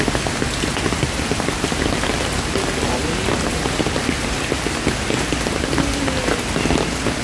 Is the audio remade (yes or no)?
no